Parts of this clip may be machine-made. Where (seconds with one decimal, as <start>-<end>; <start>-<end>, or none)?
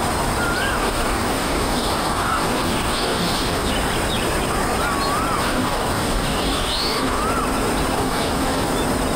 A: 0.8-3.7; 5.4-7.2; 7.9-8.7